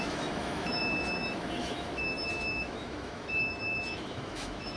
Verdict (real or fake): fake